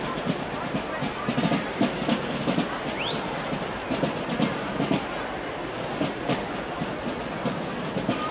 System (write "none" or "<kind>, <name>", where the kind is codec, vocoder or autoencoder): none